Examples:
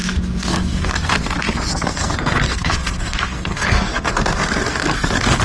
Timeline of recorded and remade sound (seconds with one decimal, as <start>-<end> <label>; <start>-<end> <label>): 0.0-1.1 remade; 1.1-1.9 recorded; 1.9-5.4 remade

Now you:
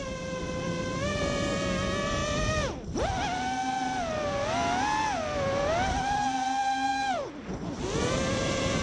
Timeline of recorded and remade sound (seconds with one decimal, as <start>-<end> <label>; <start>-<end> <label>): 0.0-8.0 recorded; 8.0-8.8 remade

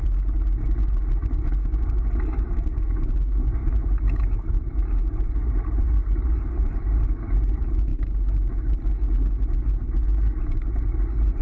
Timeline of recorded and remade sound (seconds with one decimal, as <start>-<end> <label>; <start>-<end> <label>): 0.0-3.6 recorded; 3.6-7.3 remade; 7.3-7.9 recorded; 7.9-8.5 remade; 8.5-11.4 recorded

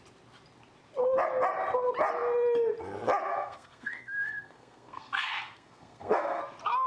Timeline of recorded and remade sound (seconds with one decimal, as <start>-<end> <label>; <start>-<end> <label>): 0.0-3.3 recorded; 3.3-6.4 remade; 6.4-6.9 recorded